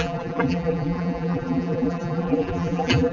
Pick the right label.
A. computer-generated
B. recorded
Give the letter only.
A